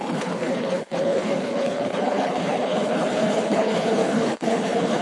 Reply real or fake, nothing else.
fake